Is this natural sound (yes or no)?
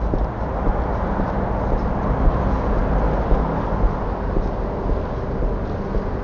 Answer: yes